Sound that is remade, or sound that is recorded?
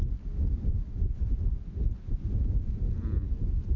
recorded